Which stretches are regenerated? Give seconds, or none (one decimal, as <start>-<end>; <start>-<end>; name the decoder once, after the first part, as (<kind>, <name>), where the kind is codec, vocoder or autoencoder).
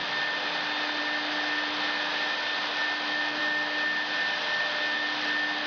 none